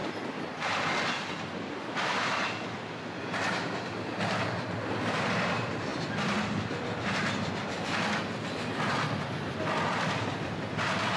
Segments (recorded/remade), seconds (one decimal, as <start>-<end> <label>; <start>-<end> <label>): 0.0-11.2 recorded